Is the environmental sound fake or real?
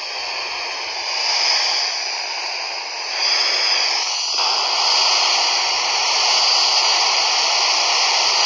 real